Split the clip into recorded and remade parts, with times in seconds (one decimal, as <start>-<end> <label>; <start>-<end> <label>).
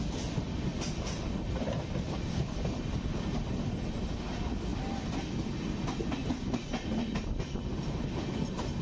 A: 0.0-0.7 recorded; 0.7-1.9 remade; 1.9-8.8 recorded